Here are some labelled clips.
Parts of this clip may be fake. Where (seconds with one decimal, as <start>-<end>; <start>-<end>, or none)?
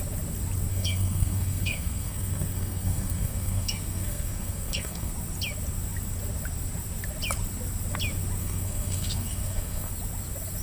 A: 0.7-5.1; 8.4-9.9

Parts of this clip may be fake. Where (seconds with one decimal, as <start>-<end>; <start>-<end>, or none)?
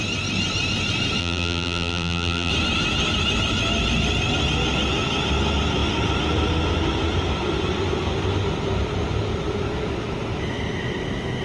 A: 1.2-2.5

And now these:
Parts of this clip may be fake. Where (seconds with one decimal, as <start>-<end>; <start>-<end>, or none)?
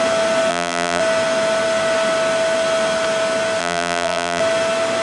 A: 0.5-1.0; 3.6-4.4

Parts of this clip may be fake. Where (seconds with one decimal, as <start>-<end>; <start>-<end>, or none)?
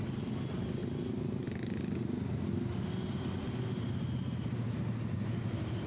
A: none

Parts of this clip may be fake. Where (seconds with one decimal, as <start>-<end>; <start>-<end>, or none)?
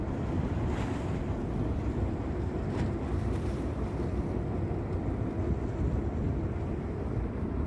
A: 6.2-7.7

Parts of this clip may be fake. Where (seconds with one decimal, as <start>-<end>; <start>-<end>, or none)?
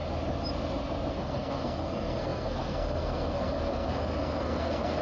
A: 1.1-5.0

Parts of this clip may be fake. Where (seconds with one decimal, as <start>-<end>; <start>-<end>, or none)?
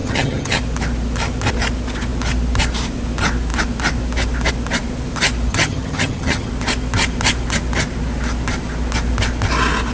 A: 0.0-0.6; 5.5-6.5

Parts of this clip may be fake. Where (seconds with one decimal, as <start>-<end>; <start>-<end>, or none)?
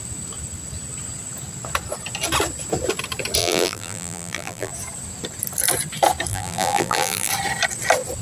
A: 3.4-4.7; 6.3-7.3